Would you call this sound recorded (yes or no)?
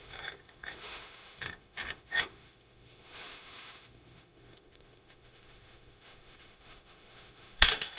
no